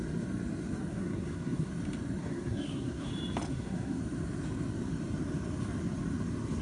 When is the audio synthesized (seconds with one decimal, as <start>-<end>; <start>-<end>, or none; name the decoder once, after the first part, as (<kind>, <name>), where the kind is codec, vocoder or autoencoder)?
0.9-1.7 (codec, SNAC); 2.2-3.1; 3.5-4.0